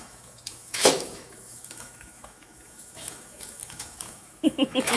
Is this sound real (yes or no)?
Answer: no